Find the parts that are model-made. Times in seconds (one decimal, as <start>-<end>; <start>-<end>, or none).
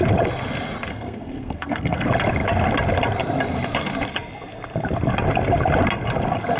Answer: 0.9-2.0